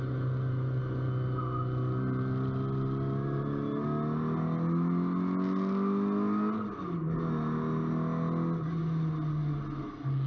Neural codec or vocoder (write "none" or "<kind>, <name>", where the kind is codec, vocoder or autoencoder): none